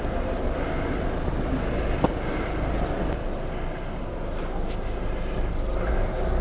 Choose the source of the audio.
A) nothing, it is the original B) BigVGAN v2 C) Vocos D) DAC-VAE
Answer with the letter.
A